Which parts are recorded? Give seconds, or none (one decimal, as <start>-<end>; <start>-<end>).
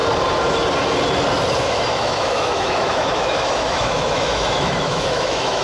0.0-1.6